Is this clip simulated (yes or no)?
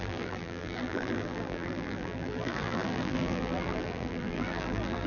yes